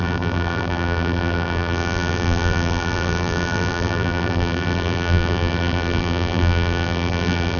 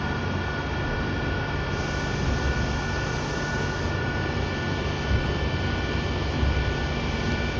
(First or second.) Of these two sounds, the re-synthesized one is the first